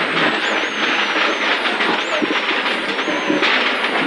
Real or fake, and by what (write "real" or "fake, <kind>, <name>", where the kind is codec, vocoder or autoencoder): real